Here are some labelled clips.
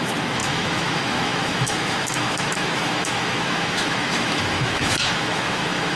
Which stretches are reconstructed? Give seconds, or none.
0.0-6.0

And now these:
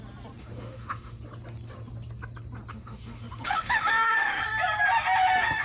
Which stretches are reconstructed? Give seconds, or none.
0.4-1.2; 2.7-4.4

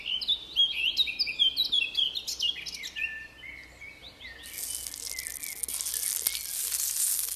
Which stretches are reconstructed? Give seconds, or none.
none

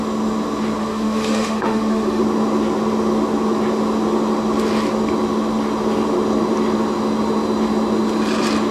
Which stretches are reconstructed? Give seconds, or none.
0.8-2.2

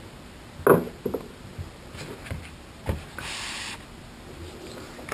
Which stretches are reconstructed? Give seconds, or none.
none

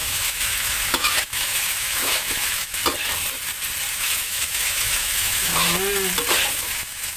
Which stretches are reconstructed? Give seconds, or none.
0.0-2.8; 3.9-5.5; 6.5-7.2